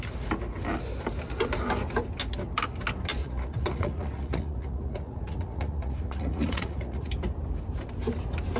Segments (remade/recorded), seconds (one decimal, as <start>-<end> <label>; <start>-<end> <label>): 0.0-3.2 recorded; 3.2-7.1 remade; 7.1-8.6 recorded